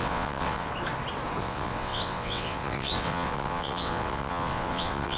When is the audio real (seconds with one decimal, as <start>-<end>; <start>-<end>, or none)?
0.7-1.4